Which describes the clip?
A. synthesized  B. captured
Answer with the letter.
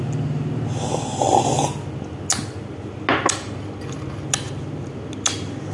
B